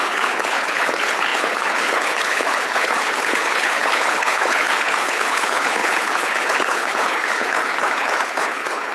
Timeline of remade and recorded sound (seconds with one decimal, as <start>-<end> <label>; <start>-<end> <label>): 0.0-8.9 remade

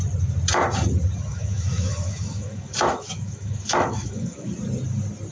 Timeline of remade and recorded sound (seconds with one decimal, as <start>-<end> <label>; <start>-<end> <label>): 0.0-1.3 recorded; 1.3-4.5 remade; 4.5-5.3 recorded

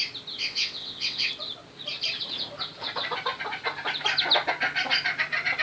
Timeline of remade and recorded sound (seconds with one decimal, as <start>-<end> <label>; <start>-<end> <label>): 0.0-0.4 recorded; 0.4-1.3 remade; 1.3-5.6 recorded

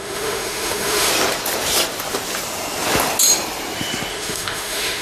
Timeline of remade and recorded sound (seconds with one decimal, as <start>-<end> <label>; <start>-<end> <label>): 0.0-1.1 remade; 1.1-4.1 recorded; 4.1-5.0 remade

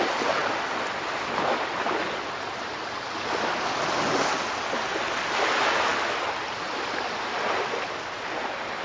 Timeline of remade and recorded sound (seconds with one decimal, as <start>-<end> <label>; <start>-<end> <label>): 0.0-8.8 recorded

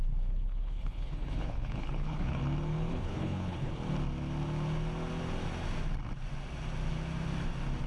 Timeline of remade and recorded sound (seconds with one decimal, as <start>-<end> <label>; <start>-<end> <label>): 0.0-2.4 remade; 2.4-2.9 recorded; 2.9-3.7 remade; 3.7-7.9 recorded

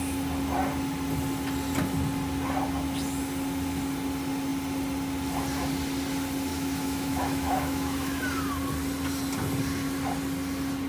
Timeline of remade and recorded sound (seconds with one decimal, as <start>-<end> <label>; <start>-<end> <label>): 0.0-6.5 recorded; 6.5-8.2 remade; 8.2-10.9 recorded

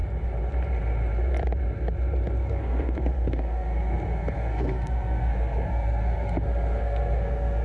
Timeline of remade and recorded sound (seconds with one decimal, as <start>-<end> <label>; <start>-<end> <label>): 0.0-2.5 recorded; 2.5-7.6 remade